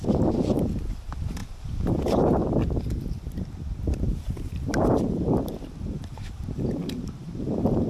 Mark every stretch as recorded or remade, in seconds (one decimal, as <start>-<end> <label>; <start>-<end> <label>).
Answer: 0.0-2.4 remade; 2.4-3.8 recorded; 3.8-7.9 remade